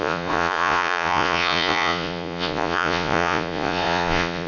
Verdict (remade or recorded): remade